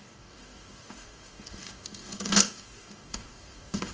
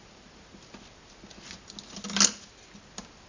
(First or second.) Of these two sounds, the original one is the second